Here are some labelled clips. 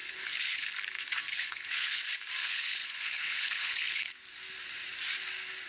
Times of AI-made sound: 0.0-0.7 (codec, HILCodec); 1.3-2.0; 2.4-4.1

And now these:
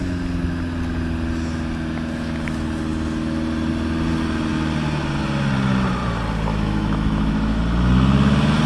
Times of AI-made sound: 6.5-7.6 (autoencoder, DAC-VAE)

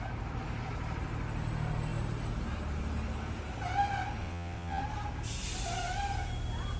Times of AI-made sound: 4.2-4.8 (vocoder, WaveNeXt)

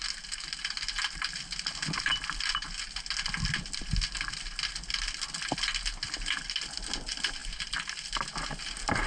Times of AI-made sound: none

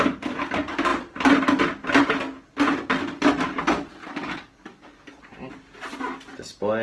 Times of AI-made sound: 4.0-5.2 (codec, DAC)

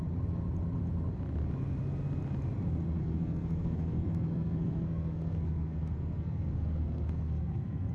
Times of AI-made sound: 3.0-7.9 (codec, SNAC)

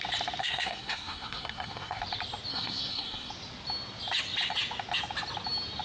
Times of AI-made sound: 0.4-2.0 (codec, SNAC); 2.5-3.3

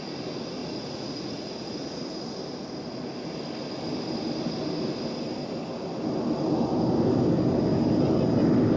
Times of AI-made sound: 0.6-2.2 (vocoder, Vocos)